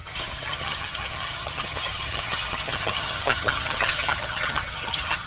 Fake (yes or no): yes